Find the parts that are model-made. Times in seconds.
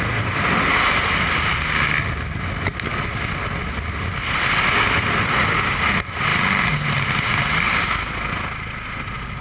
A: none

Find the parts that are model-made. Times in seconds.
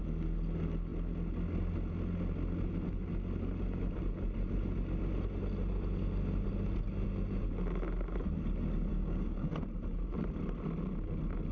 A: 8.9-9.5 (codec, DAC)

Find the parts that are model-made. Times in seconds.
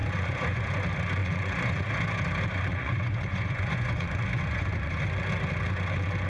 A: 0.0-0.7 (vocoder, Vocos); 1.2-1.9; 2.7-5.0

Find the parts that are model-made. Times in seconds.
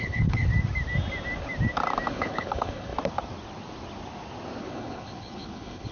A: 0.0-0.5 (codec, HILCodec); 2.1-2.9; 4.6-5.9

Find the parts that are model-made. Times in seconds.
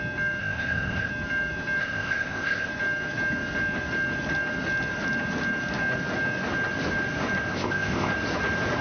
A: 0.4-1.1 (codec, ZipCodec); 1.8-2.7; 7.5-8.1